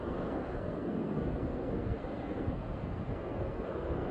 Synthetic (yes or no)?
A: yes